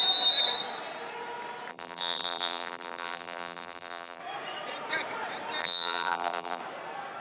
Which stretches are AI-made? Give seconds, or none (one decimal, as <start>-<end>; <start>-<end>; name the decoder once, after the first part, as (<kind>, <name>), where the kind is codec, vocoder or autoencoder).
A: 1.7-4.2 (vocoder, BigVGAN v2); 5.6-6.6